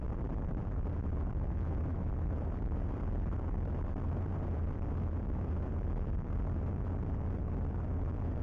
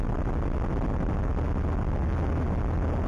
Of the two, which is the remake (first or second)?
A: first